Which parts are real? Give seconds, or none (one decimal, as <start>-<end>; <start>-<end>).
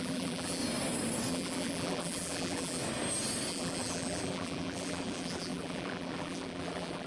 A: 0.6-1.3; 2.8-3.5